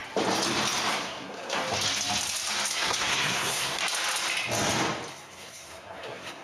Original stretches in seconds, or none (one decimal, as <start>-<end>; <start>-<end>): 0.0-0.9; 1.6-2.7; 3.8-5.1